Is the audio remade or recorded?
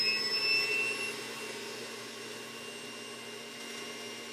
recorded